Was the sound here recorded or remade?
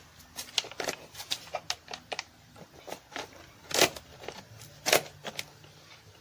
recorded